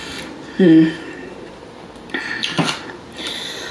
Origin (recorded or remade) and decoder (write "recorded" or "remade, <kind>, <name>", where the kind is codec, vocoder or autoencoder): recorded